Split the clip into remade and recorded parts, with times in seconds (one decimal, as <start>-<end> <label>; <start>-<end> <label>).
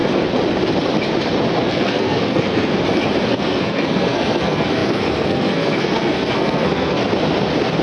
0.0-1.6 recorded; 1.6-2.7 remade; 2.7-3.3 recorded; 3.3-7.0 remade; 7.0-7.8 recorded